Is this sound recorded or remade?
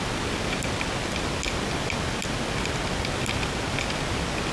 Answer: recorded